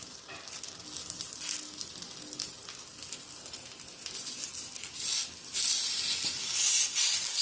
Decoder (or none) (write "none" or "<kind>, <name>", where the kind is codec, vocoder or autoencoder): none